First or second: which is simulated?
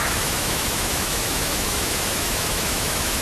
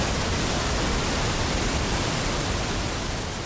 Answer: first